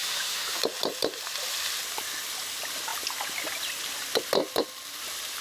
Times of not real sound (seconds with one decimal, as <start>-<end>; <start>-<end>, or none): 0.0-0.6